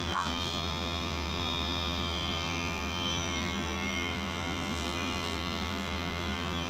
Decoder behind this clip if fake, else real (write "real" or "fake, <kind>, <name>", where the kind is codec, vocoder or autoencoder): fake, vocoder, BigVGAN v2